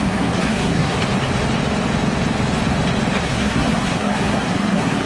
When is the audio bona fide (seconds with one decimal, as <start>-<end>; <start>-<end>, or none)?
1.0-3.2